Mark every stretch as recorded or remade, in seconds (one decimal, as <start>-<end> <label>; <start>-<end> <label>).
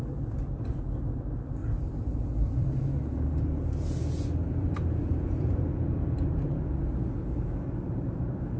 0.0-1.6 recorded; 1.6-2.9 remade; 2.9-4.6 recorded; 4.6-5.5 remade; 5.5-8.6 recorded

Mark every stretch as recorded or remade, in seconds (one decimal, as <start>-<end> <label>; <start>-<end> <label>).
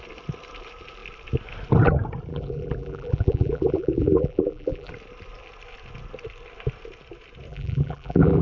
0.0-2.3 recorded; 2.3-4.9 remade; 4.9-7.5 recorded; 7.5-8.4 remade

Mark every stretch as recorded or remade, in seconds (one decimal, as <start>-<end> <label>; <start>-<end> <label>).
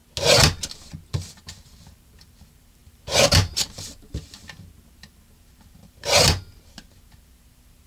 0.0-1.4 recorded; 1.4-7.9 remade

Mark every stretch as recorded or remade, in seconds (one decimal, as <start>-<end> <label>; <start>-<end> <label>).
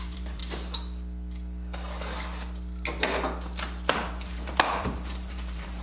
0.0-0.4 remade; 0.4-3.9 recorded; 3.9-5.8 remade